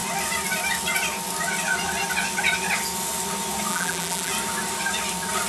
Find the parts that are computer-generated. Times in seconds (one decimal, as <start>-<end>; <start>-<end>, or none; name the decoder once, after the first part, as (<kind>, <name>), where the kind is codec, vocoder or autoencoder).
3.7-4.3 (vocoder, BigVGAN v2)